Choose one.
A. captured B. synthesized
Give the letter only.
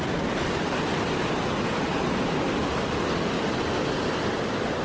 A